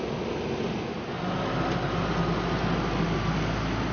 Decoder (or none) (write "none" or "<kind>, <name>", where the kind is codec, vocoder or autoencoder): none